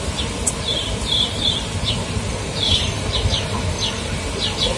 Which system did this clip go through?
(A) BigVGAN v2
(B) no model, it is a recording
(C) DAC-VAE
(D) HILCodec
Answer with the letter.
B